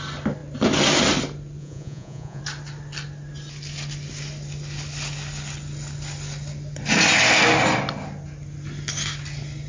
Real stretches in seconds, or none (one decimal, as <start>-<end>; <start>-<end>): 0.0-1.6; 2.4-9.7